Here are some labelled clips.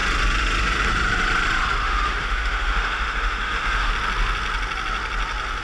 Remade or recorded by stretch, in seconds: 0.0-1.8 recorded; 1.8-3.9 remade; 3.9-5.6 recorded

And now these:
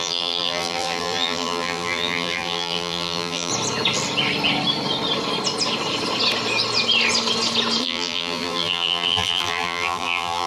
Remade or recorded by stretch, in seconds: 0.0-3.5 remade; 3.5-7.8 recorded; 7.8-10.5 remade

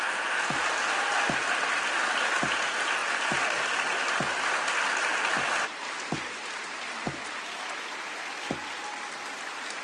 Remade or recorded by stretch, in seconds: 0.0-9.8 recorded